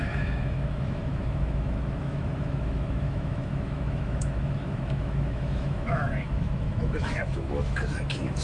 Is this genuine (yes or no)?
no